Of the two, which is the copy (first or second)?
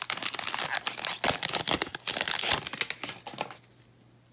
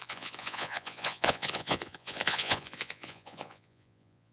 second